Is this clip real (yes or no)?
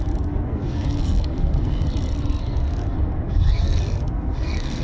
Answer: no